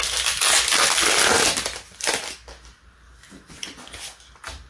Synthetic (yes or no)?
no